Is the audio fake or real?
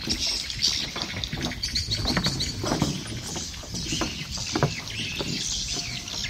real